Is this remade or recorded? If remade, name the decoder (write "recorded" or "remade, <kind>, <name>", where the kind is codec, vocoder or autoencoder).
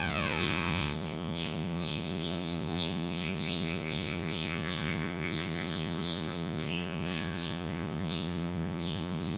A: remade, vocoder, Vocos